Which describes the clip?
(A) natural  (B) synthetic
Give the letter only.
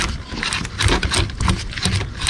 A